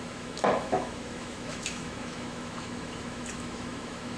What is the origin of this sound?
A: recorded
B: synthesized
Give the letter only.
B